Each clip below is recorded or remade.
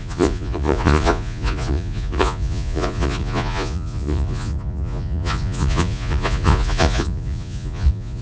remade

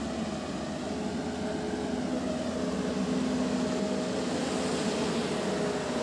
recorded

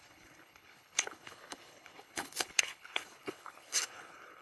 remade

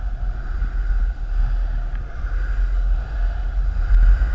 recorded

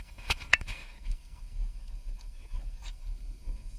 remade